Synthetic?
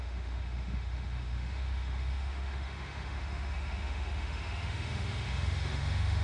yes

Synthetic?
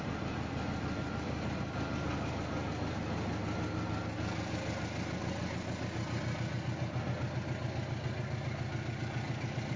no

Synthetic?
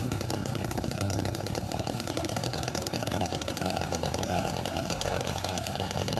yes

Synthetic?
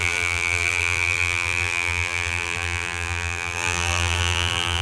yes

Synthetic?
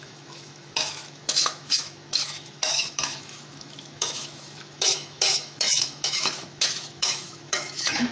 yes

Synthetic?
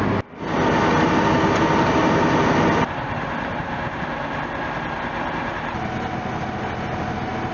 no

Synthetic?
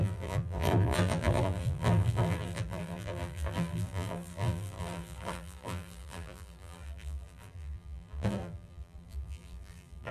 yes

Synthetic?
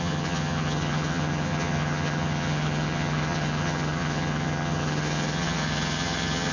yes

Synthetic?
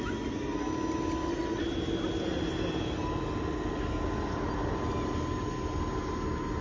no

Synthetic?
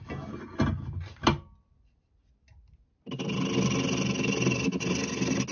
no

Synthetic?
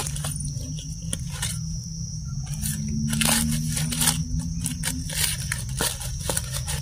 no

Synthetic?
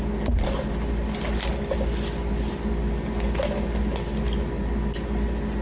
no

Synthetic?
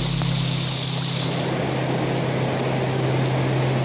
no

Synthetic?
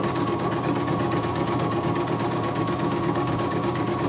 yes